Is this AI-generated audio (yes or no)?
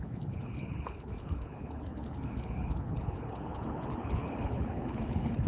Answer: yes